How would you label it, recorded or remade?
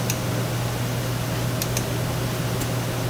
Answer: recorded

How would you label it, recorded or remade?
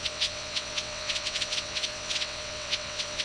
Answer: remade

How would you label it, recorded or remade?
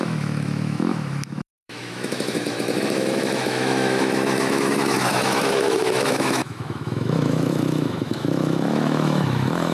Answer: remade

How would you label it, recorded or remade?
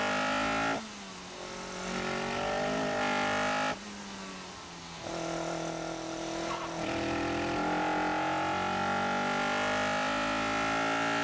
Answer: recorded